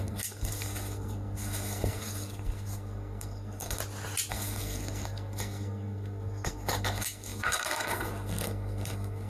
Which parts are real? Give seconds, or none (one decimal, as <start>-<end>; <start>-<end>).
3.8-4.3